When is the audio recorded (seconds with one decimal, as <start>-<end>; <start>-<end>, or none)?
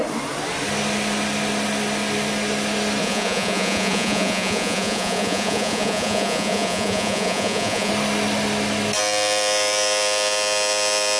0.0-3.0; 7.9-11.2